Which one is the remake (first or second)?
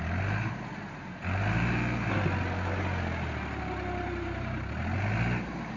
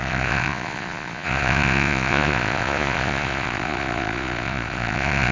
second